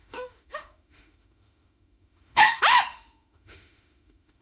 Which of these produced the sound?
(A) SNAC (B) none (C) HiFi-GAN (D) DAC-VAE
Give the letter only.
D